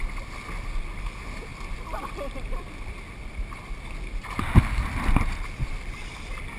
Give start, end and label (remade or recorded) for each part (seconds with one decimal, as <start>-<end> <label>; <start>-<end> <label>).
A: 0.0-6.6 recorded